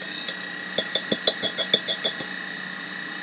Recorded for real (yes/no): yes